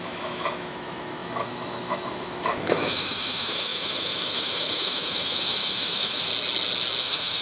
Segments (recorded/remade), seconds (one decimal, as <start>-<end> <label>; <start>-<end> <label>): 0.0-6.3 remade; 6.3-7.0 recorded; 7.0-7.4 remade